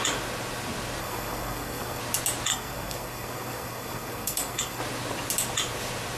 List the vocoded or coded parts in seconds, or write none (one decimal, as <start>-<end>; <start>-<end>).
1.0-2.0; 2.5-4.8